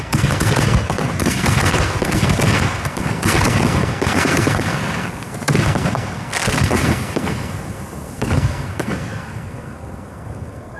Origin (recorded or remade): remade